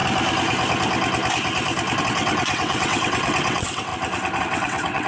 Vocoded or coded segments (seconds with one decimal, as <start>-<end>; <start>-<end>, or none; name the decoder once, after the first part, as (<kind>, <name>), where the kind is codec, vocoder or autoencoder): 2.0-3.9 (vocoder, WaveNeXt); 4.4-5.1